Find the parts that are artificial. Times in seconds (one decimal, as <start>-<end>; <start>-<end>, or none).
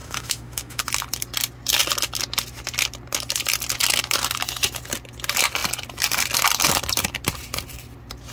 0.0-0.8